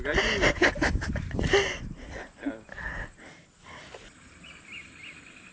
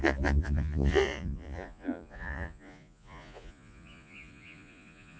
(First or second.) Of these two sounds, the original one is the first